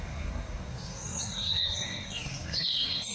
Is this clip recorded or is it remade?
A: remade